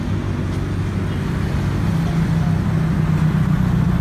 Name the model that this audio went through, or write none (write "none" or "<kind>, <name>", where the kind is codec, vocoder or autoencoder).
none